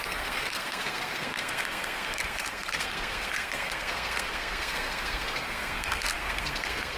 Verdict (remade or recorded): remade